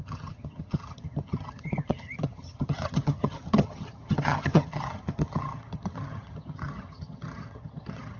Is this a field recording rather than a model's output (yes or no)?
no